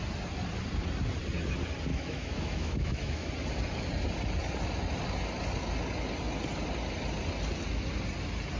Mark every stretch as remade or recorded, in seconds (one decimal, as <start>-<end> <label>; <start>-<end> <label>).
0.0-1.9 recorded; 1.9-3.3 remade; 3.3-8.6 recorded